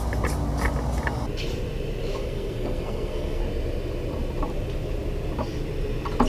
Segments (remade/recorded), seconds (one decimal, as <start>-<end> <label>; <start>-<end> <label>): 0.0-2.1 recorded; 2.1-3.4 remade; 3.4-6.3 recorded